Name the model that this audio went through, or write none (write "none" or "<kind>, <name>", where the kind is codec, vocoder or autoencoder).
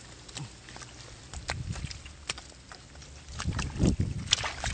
none